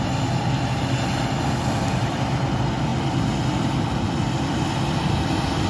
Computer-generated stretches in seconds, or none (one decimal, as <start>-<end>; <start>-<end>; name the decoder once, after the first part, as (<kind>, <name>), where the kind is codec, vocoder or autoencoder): 2.9-5.7 (vocoder, BigVGAN v2)